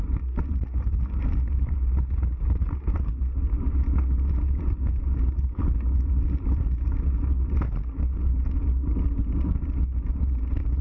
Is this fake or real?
real